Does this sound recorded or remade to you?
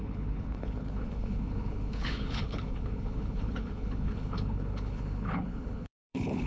remade